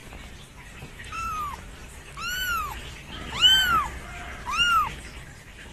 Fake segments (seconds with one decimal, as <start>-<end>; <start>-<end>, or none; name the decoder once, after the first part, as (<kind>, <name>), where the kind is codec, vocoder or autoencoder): none